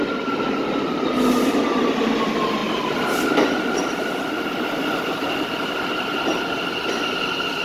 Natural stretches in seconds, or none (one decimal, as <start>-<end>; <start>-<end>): 0.0-7.6

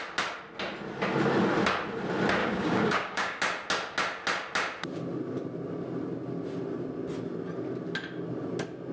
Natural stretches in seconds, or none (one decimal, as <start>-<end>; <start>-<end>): 0.0-2.4; 3.4-8.9

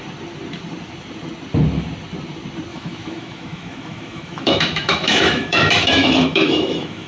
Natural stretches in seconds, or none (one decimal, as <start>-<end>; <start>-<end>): 0.0-2.7

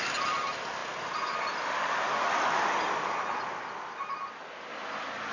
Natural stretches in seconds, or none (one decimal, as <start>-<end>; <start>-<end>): 0.0-5.3